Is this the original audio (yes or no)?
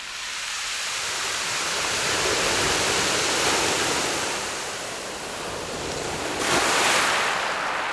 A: yes